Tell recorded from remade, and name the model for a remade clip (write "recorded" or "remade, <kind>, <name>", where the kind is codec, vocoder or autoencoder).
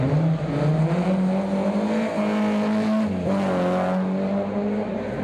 recorded